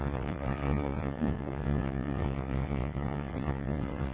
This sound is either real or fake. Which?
fake